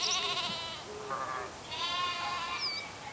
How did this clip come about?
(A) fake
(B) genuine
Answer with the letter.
B